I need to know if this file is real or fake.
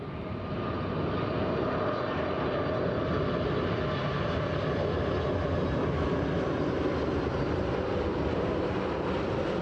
real